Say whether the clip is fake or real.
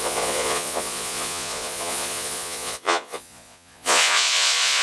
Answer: fake